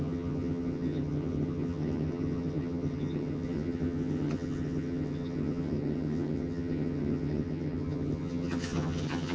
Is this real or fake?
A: fake